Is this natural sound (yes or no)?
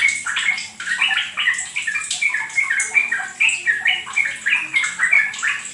yes